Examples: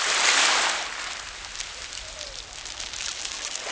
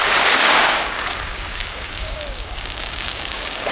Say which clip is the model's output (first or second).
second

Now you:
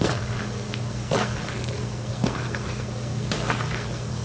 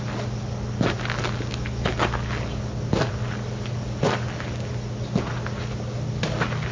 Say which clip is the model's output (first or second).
first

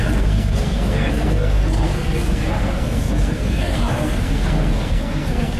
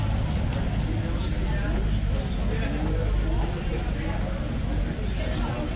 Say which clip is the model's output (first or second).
first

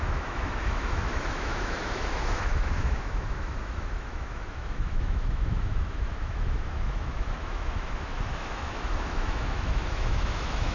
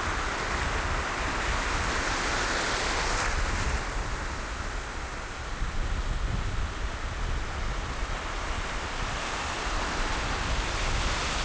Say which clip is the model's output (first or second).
first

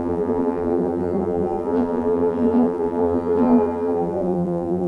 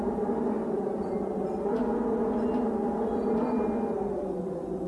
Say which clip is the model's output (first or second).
first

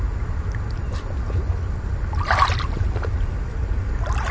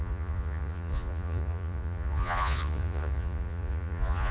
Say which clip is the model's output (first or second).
second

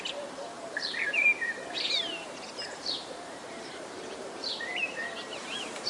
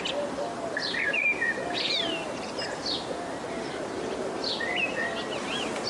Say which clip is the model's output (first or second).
first